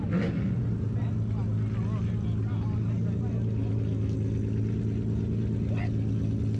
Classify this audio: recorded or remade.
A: recorded